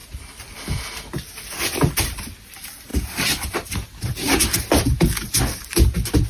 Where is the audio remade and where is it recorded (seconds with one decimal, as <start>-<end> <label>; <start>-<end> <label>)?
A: 0.0-2.3 remade; 2.3-6.3 recorded